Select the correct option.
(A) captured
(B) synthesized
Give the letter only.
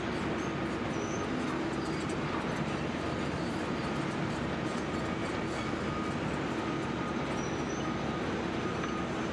A